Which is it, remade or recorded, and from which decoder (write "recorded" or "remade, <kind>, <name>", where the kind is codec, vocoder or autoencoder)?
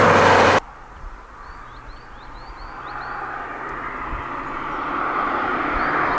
recorded